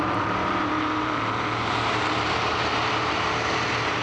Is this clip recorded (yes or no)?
no